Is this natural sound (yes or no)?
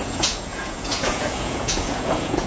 no